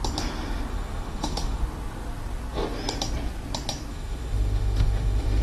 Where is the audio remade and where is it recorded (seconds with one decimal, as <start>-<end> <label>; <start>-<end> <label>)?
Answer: 0.0-0.7 recorded; 0.7-1.6 remade; 1.6-3.9 recorded; 3.9-5.4 remade